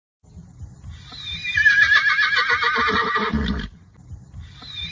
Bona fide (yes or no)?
yes